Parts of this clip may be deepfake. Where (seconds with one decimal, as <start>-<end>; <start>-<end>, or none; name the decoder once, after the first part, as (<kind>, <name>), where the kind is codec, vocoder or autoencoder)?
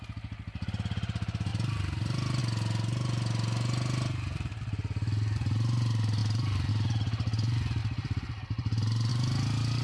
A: 1.5-2.4 (vocoder, BigVGAN v2); 7.8-9.1